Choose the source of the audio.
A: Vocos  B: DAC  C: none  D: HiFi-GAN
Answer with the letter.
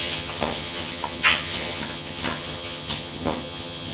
D